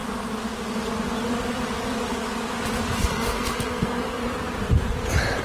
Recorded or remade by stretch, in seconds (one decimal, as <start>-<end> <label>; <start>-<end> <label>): 0.0-3.0 recorded; 3.0-4.2 remade; 4.2-5.4 recorded